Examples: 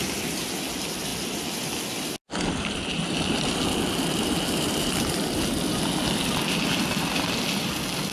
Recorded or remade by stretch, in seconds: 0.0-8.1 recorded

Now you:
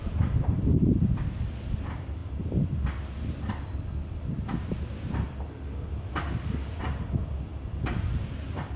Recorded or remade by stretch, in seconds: 0.0-8.8 recorded

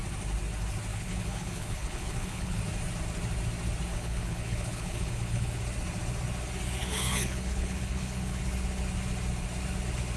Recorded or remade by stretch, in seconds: 0.0-0.9 recorded; 0.9-2.6 remade; 2.6-3.9 recorded; 3.9-5.6 remade; 5.6-6.8 recorded; 6.8-8.4 remade; 8.4-10.2 recorded

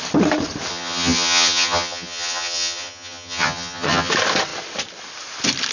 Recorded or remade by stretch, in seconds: 0.0-0.7 recorded; 0.7-4.1 remade; 4.1-5.7 recorded

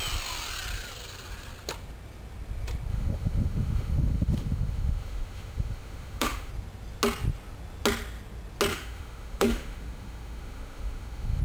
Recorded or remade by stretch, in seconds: 0.0-2.9 recorded; 2.9-6.5 remade; 6.5-8.7 recorded; 8.7-11.4 remade

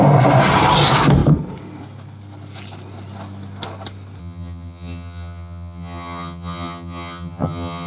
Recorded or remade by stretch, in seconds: 0.0-4.2 recorded; 4.2-7.9 remade

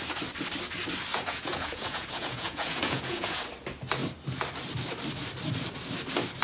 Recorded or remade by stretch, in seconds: 0.0-1.1 recorded; 1.1-3.4 remade; 3.4-6.4 recorded

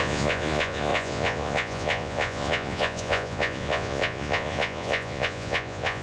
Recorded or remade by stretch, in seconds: 0.0-6.0 remade